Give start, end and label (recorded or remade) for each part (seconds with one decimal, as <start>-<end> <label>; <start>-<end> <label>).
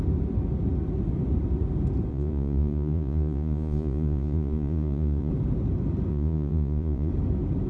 0.0-2.1 recorded; 2.1-5.3 remade; 5.3-6.1 recorded; 6.1-7.1 remade; 7.1-7.7 recorded